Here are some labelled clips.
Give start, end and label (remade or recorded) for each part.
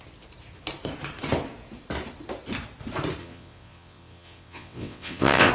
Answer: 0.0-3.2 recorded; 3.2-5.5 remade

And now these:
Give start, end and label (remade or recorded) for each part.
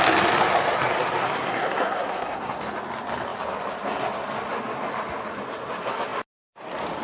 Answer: 0.0-1.2 recorded; 1.2-2.6 remade; 2.6-7.0 recorded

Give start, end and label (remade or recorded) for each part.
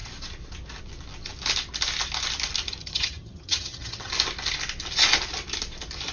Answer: 0.0-2.8 recorded; 2.8-4.1 remade; 4.1-6.1 recorded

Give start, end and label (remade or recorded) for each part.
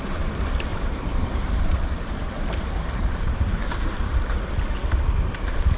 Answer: 0.0-0.7 recorded; 0.7-4.2 remade; 4.2-5.8 recorded